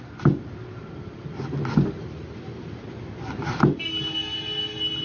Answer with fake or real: real